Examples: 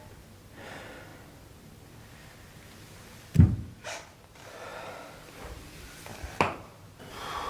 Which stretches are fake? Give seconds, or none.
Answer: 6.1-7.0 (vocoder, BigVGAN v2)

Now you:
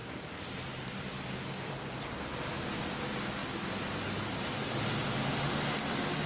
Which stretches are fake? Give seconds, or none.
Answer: 0.0-2.0 (vocoder, BigVGAN v2)

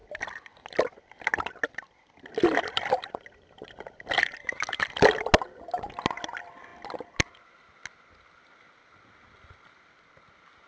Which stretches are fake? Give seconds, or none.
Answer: none